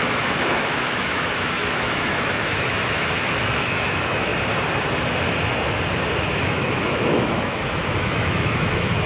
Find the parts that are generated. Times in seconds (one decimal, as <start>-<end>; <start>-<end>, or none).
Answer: 0.0-4.3; 6.2-9.1